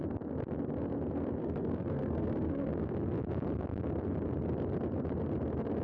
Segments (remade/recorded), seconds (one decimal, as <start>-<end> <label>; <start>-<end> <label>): 0.0-1.4 recorded; 1.4-2.9 remade; 2.9-5.8 recorded